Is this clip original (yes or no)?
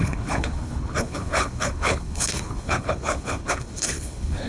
no